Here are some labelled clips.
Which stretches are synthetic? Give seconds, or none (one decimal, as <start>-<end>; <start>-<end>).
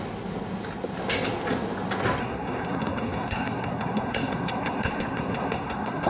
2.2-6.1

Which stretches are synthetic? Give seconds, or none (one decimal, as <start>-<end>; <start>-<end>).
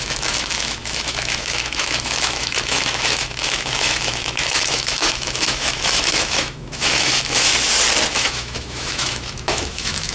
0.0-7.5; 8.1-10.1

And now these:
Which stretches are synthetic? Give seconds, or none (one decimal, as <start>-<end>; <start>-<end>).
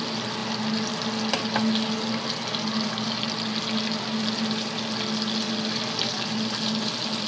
none